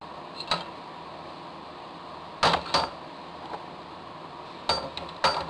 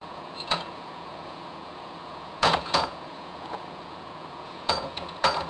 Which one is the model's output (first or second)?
second